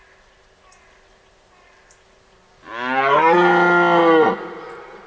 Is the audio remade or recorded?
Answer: recorded